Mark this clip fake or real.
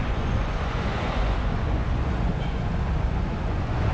fake